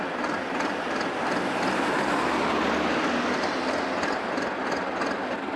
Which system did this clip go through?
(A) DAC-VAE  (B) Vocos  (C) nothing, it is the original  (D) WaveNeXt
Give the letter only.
C